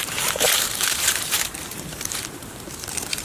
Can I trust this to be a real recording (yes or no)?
no